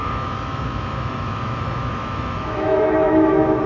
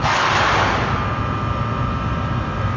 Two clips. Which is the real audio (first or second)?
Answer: second